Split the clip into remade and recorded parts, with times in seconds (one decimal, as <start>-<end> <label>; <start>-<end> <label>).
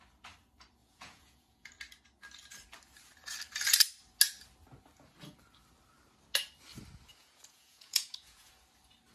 0.0-0.8 recorded; 0.8-1.7 remade; 1.7-7.1 recorded; 7.1-8.5 remade; 8.5-9.1 recorded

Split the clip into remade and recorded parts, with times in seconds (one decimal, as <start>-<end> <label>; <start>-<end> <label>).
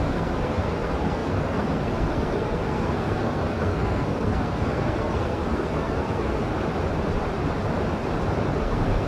0.0-6.5 remade; 6.5-8.6 recorded; 8.6-9.1 remade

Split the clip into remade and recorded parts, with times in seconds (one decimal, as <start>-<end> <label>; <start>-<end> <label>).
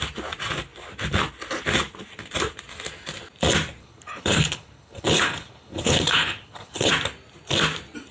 0.0-3.8 recorded; 3.8-6.9 remade; 6.9-8.1 recorded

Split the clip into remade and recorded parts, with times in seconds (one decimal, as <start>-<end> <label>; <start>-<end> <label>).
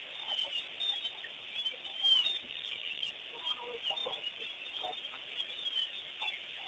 0.0-2.5 recorded; 2.5-3.1 remade; 3.1-6.7 recorded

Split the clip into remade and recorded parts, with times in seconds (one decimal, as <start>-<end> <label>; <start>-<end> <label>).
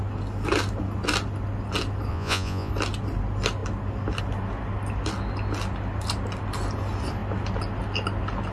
0.0-2.1 recorded; 2.1-2.7 remade; 2.7-8.5 recorded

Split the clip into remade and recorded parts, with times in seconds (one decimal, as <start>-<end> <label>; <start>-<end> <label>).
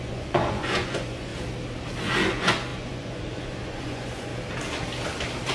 0.0-1.3 remade; 1.3-2.0 recorded; 2.0-4.3 remade; 4.3-5.5 recorded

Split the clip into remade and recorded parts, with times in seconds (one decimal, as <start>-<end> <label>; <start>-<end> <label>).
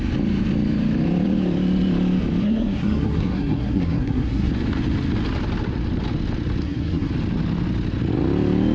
0.0-2.4 recorded; 2.4-4.5 remade; 4.5-6.6 recorded; 6.6-7.1 remade; 7.1-8.7 recorded